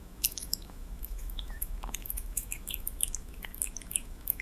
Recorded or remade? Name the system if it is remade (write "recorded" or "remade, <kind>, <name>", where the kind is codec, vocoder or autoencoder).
remade, autoencoder, DAC-VAE